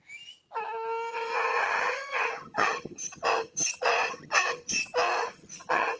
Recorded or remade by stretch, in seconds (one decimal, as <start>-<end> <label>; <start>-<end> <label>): 0.0-1.1 recorded; 1.1-4.7 remade; 4.7-5.2 recorded; 5.2-6.0 remade